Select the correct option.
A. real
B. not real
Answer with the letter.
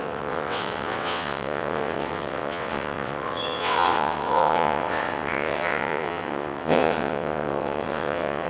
B